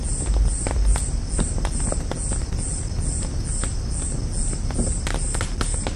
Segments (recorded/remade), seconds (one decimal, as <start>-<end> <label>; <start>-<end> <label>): 0.0-6.0 recorded